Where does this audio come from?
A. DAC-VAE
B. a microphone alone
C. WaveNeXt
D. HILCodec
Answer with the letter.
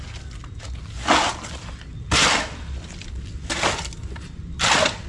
B